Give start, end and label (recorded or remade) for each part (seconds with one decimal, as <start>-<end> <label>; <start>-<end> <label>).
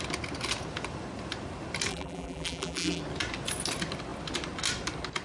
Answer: 0.0-1.9 recorded; 1.9-3.0 remade; 3.0-5.2 recorded